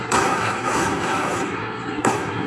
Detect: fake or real fake